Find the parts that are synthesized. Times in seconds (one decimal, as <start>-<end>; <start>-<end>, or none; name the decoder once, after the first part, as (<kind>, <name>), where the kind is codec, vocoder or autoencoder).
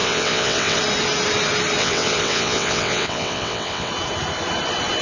0.0-0.8 (vocoder, WaveNeXt); 1.8-3.9